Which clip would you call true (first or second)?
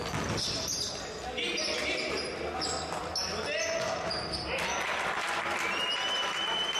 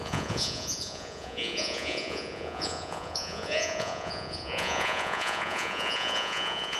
first